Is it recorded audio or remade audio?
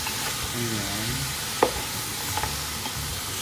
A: recorded